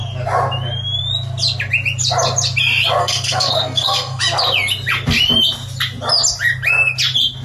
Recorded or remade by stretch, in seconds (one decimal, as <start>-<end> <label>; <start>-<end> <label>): 0.0-3.0 recorded; 3.0-4.2 remade; 4.2-7.4 recorded